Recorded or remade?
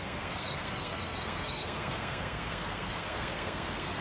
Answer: remade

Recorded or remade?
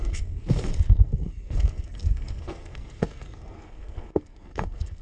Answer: remade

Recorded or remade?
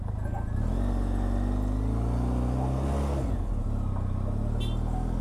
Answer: recorded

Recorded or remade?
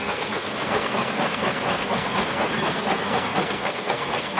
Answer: remade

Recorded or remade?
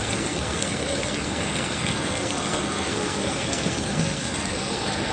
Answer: remade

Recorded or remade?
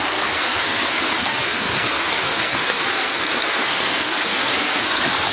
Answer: remade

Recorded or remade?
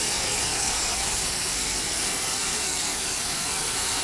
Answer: remade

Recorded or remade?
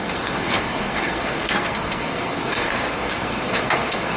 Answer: remade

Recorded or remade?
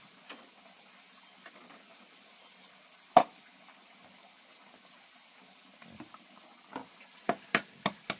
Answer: recorded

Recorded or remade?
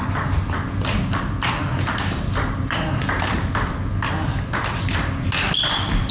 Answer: recorded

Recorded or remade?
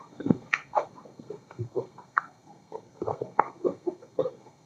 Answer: remade